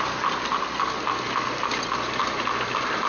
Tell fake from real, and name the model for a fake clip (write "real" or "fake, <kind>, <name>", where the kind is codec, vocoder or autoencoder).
real